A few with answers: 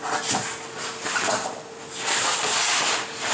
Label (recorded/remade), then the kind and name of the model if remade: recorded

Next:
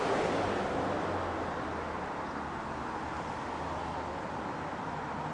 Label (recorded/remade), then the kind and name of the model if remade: recorded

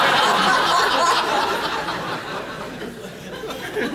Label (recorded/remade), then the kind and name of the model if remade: recorded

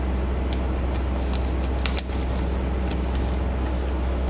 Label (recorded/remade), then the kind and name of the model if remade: recorded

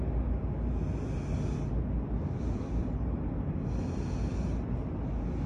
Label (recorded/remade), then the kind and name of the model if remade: recorded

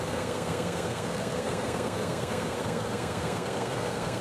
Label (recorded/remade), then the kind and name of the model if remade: remade, codec, SNAC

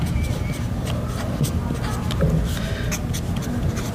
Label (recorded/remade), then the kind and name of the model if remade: recorded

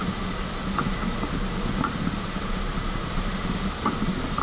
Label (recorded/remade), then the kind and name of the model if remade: recorded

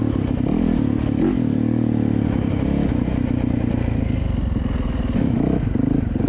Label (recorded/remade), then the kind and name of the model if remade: recorded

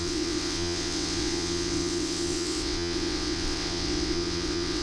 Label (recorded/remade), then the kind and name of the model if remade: remade, vocoder, WaveNeXt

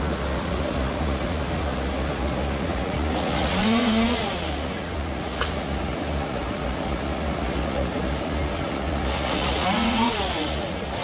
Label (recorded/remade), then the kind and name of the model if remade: remade, vocoder, Vocos